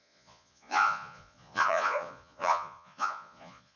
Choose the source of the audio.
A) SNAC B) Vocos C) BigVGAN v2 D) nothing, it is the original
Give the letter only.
B